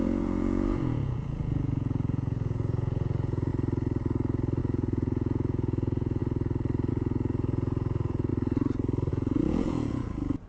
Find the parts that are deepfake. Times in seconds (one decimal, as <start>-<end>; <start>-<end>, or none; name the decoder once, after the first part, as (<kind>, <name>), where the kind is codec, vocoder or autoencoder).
0.0-3.5 (vocoder, Vocos); 4.6-6.2; 6.9-8.3; 9.1-10.5